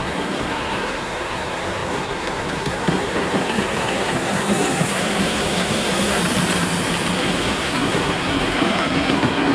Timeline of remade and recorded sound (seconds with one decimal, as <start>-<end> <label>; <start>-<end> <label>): 0.0-6.2 remade; 6.2-7.2 recorded; 7.2-9.5 remade